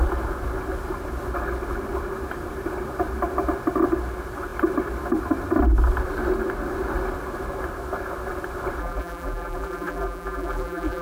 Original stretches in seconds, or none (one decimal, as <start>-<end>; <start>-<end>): 0.0-8.8

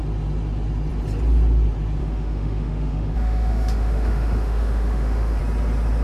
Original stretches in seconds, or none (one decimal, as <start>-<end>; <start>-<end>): 0.0-2.0; 5.4-6.0

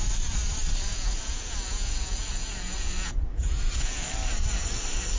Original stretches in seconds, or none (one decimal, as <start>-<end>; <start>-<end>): 0.0-0.9; 4.0-5.2

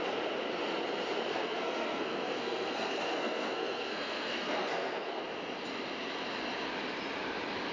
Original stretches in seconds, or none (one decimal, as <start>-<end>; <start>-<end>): 0.0-1.3; 5.2-7.7

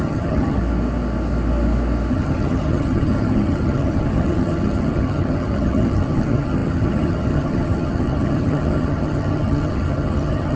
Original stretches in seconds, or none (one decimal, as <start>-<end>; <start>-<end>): 0.6-2.1

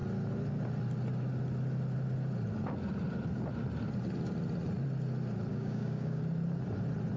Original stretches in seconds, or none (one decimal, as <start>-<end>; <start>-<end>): 0.0-5.5; 6.2-7.2

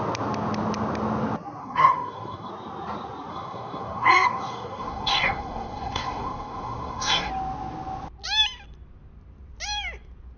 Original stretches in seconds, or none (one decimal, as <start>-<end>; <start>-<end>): 0.0-1.6; 2.5-3.3; 7.3-10.4